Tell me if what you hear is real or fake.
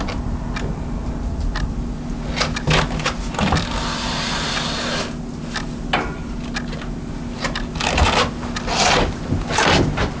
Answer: real